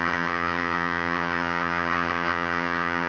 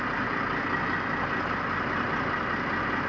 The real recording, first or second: second